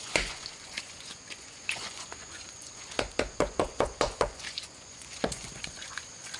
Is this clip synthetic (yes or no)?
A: yes